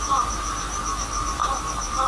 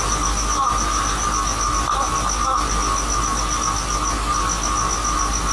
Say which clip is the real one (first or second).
second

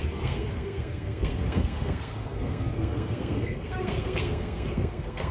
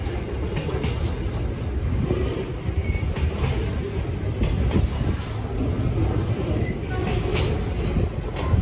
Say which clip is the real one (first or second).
second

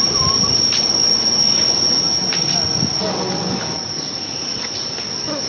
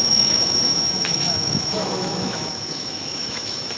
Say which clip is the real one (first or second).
first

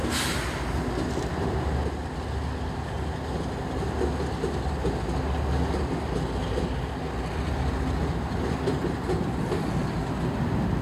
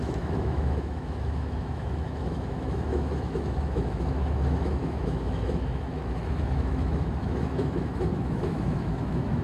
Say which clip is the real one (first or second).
first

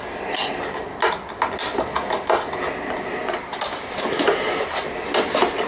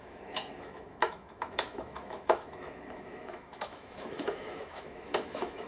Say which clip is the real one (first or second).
first